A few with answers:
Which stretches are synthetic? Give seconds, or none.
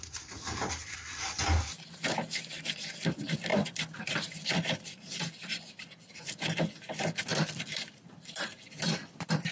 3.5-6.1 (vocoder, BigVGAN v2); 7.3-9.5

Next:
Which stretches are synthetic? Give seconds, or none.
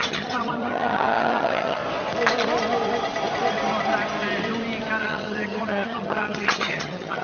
0.0-1.8 (vocoder, HiFi-GAN); 5.0-7.2